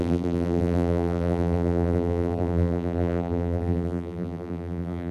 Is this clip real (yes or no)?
no